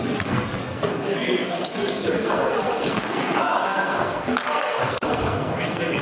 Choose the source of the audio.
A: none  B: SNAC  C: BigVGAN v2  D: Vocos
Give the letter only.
B